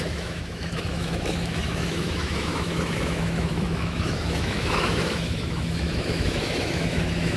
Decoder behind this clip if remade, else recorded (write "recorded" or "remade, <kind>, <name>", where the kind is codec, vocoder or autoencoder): remade, autoencoder, DAC-VAE